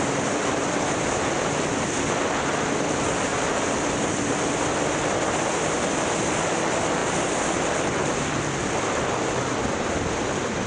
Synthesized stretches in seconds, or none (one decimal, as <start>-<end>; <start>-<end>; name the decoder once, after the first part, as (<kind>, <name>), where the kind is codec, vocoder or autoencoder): 0.0-10.7 (vocoder, BigVGAN v2)